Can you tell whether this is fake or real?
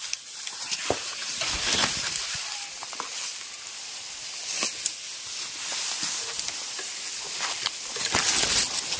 real